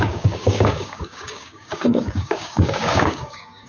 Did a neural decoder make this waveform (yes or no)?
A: yes